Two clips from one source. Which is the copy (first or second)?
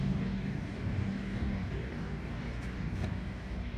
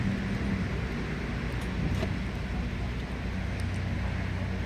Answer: first